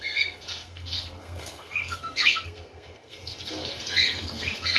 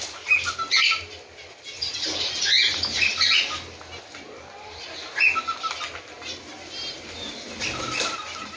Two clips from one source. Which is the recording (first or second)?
second